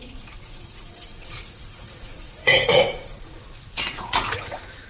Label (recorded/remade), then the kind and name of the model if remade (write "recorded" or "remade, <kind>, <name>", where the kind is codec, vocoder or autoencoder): remade, vocoder, Vocos